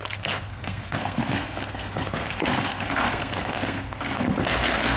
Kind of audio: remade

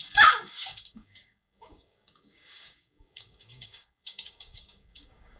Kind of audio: remade